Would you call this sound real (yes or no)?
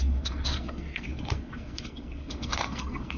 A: no